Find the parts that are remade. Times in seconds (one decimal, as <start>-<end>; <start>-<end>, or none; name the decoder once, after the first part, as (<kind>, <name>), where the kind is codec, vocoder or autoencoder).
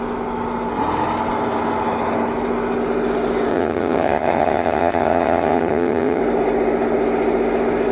3.5-6.2 (vocoder, HiFi-GAN)